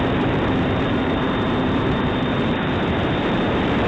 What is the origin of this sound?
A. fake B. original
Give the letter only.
A